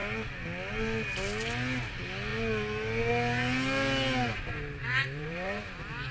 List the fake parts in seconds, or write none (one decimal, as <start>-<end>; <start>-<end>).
4.8-5.6